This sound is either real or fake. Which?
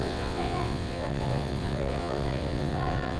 fake